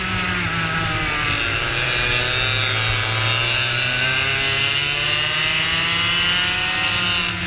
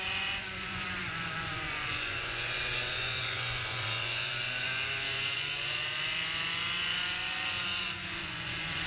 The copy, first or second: second